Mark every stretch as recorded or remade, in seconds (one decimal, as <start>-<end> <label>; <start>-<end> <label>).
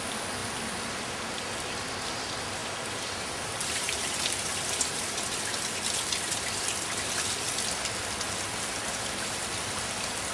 0.0-2.6 recorded; 2.6-5.0 remade; 5.0-10.3 recorded